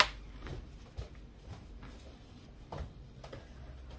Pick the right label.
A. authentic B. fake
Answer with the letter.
A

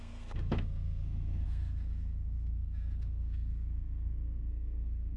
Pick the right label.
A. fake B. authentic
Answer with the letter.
A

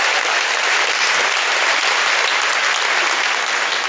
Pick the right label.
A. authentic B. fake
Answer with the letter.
A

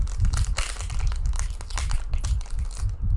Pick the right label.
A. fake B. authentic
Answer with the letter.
B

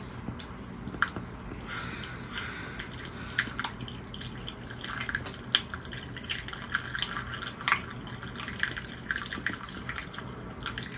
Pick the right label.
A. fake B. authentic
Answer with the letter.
B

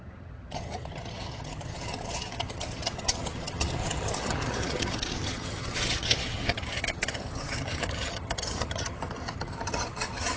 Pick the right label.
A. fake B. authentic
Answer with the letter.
A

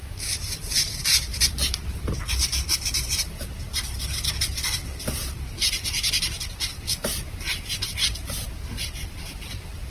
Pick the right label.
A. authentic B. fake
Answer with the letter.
B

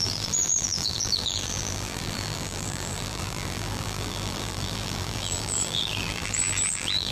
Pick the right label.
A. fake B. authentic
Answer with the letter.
A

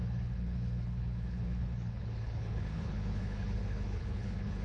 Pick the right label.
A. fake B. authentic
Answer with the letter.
A